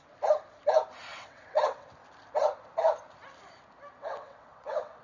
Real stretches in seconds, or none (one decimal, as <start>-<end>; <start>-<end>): 0.0-1.1; 1.9-4.0